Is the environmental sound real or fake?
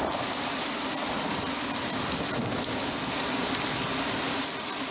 real